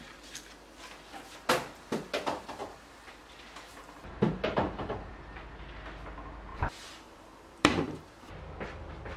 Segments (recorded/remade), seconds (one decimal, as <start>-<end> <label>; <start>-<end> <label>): 0.0-2.6 recorded; 2.6-3.2 remade; 3.2-3.7 recorded; 3.7-5.1 remade; 5.1-6.5 recorded; 6.5-8.3 remade; 8.3-9.2 recorded